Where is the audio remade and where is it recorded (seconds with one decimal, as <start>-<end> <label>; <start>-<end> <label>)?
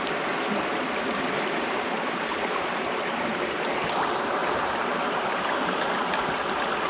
0.0-2.2 recorded; 2.2-3.0 remade; 3.0-4.4 recorded; 4.4-5.4 remade; 5.4-6.9 recorded